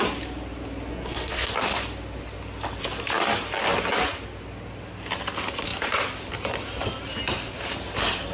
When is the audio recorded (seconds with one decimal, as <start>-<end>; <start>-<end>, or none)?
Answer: 0.0-0.9; 1.5-8.3